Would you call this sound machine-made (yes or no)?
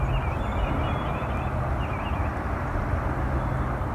no